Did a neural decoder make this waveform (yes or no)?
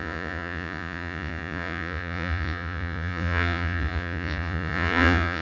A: yes